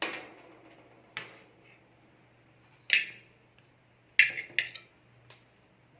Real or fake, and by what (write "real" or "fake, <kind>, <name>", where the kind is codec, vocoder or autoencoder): real